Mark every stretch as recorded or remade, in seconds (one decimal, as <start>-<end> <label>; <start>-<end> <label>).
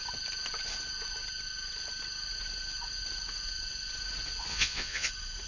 0.0-4.5 recorded; 4.5-5.1 remade; 5.1-5.5 recorded